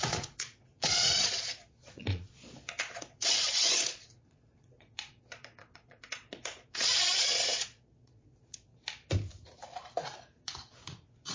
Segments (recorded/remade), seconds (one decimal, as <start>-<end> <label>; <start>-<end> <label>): 0.0-8.7 remade; 8.7-10.4 recorded; 10.4-11.3 remade